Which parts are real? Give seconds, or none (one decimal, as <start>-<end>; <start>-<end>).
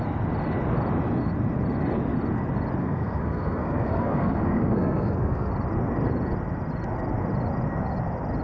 0.0-2.8; 5.5-8.4